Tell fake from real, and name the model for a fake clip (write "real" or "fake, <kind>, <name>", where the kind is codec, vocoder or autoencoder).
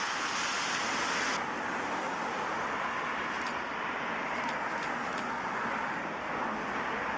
real